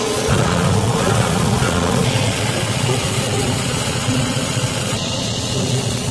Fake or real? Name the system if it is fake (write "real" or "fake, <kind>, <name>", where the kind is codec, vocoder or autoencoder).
fake, vocoder, Vocos